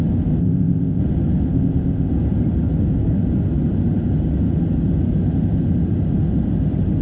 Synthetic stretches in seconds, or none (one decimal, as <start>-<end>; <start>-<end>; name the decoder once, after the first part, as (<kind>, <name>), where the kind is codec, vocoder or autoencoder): 0.4-1.0 (codec, ZipCodec); 1.5-2.1